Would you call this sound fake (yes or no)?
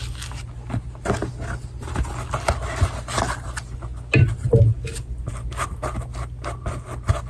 no